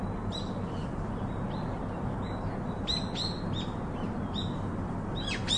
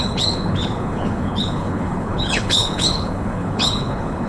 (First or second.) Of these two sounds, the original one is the first